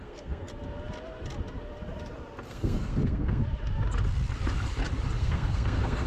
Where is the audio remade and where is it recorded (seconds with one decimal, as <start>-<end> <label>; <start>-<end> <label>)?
0.0-0.5 remade; 0.5-2.5 recorded; 2.5-3.4 remade; 3.4-5.2 recorded; 5.2-6.1 remade